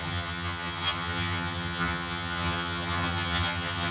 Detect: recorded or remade remade